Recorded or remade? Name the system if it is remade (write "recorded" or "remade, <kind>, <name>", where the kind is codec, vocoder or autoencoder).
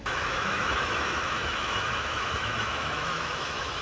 remade, autoencoder, DAC-VAE